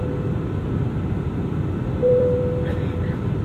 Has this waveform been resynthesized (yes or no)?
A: yes